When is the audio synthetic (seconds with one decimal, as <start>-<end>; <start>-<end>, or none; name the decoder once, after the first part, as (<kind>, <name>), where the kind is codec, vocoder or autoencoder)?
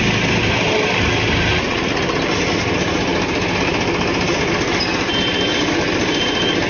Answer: 1.5-2.0 (vocoder, Vocos)